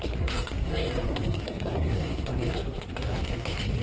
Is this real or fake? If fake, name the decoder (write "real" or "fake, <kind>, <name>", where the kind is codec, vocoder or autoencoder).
fake, codec, SNAC